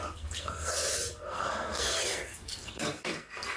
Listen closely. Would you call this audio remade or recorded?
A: remade